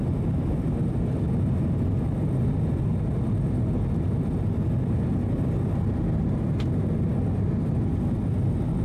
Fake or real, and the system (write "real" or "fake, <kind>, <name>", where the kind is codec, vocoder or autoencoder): real